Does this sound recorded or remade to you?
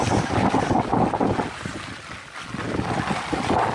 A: recorded